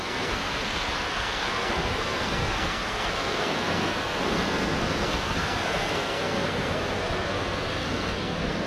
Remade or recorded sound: remade